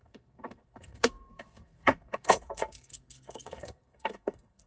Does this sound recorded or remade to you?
remade